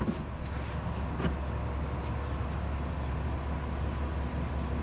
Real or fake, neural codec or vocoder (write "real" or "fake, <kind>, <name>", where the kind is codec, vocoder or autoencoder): real